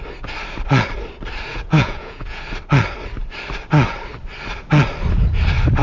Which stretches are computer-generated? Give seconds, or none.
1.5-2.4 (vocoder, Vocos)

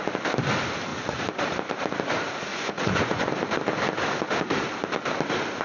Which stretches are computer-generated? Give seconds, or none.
2.5-3.3 (vocoder, Vocos)

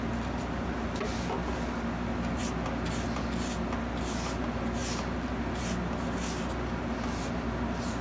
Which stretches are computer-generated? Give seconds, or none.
none

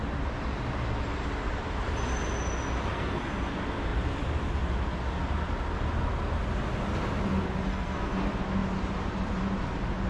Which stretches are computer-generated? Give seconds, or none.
2.9-3.5 (codec, SNAC); 7.7-8.2

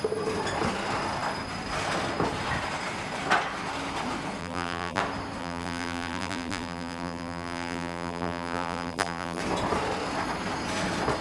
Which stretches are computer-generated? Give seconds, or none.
4.4-5.0 (vocoder, BigVGAN v2); 5.4-9.4

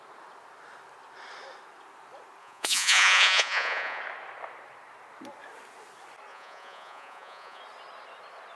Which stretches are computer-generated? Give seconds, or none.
2.4-4.0 (vocoder, Vocos); 6.3-7.6

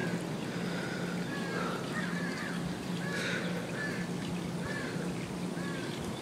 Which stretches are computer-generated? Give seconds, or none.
none